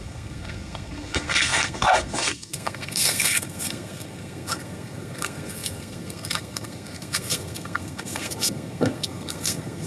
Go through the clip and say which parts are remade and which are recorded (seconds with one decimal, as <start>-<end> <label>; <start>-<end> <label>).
0.0-9.9 remade